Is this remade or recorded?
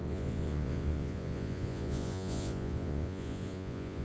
remade